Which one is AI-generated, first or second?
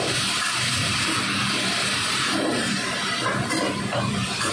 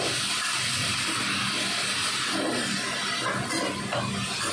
first